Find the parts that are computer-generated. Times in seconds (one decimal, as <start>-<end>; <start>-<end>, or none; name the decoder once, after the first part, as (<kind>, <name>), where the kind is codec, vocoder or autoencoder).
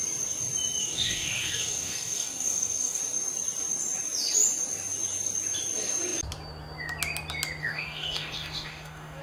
0.8-3.0 (codec, DAC); 7.6-9.2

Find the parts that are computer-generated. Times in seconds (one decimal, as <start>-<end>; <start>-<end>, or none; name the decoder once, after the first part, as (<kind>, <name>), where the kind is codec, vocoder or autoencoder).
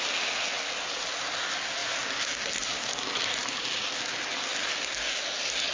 none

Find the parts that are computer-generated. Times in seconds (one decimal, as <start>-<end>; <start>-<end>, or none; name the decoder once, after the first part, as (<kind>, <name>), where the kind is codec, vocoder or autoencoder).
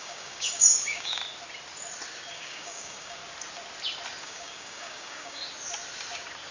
0.0-1.2 (codec, DAC); 2.3-3.2; 4.2-5.4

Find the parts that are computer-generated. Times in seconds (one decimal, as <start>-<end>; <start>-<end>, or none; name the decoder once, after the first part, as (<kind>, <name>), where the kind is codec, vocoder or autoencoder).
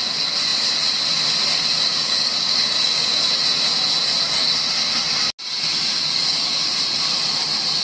1.9-3.2 (codec, DAC); 5.9-6.7